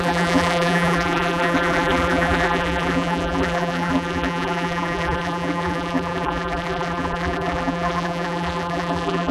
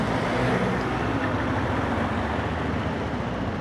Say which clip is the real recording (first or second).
second